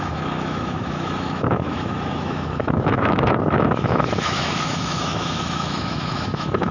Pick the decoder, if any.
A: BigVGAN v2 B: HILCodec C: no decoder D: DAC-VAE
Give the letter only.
D